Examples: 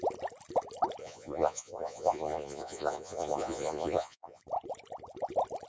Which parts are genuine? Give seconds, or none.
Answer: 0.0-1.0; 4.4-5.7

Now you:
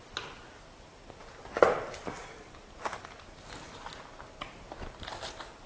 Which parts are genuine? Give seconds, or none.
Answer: 0.0-5.7

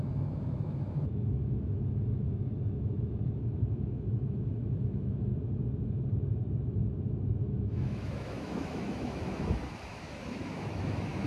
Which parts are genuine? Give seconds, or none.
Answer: 5.3-7.4

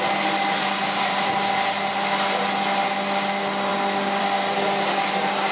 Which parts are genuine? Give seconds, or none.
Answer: 0.0-5.5